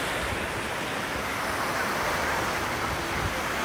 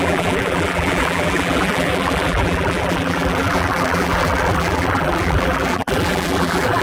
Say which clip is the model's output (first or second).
second